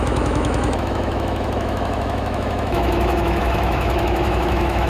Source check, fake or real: fake